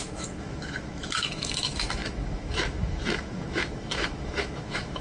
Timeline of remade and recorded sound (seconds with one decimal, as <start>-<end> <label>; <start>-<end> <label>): 0.0-5.0 remade

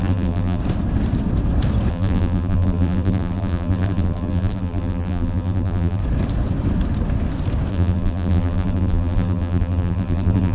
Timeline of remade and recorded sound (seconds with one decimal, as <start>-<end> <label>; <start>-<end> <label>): 0.0-0.6 remade; 0.6-1.9 recorded; 1.9-6.0 remade; 6.0-7.7 recorded; 7.7-10.5 remade

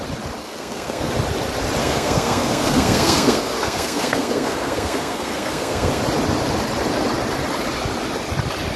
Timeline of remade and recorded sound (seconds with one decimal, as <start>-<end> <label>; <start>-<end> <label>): 0.0-0.4 recorded; 0.4-1.1 remade; 1.1-1.8 recorded; 1.8-6.0 remade; 6.0-8.8 recorded